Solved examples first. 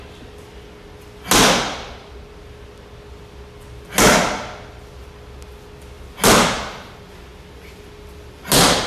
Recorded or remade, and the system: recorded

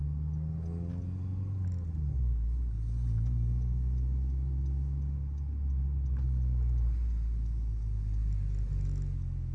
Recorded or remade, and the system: recorded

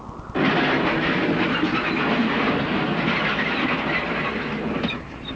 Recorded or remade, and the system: recorded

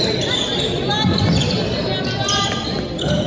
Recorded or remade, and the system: recorded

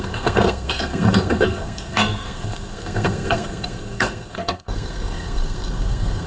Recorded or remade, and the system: remade, codec, SNAC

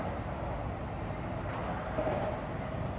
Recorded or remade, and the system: recorded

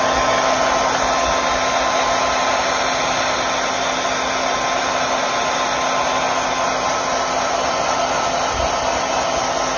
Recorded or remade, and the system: recorded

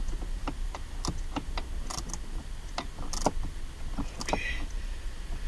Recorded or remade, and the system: recorded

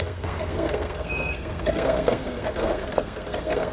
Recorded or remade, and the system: remade, codec, SNAC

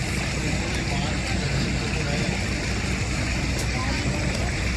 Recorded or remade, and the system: recorded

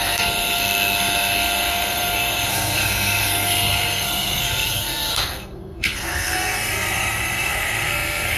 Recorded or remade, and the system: remade, codec, SNAC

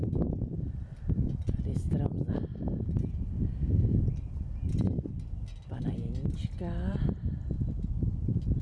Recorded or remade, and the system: recorded